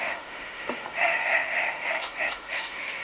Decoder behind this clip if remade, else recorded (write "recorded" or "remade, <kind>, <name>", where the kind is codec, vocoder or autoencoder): remade, autoencoder, DAC-VAE